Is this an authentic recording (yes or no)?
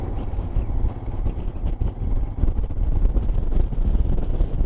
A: yes